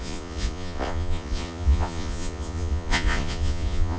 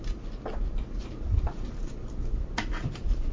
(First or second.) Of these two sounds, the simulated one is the first